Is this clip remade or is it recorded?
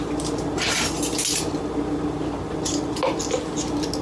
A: recorded